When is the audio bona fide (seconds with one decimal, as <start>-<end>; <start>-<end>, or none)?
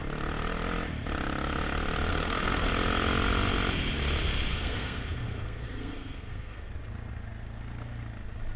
0.0-2.1; 2.7-4.5; 6.7-8.6